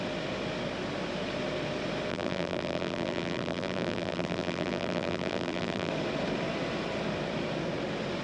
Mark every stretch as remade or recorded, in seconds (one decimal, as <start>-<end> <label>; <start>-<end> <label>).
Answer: 0.0-2.1 recorded; 2.1-5.9 remade; 5.9-8.2 recorded